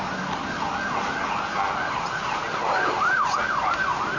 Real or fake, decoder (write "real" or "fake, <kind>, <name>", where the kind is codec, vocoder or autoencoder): real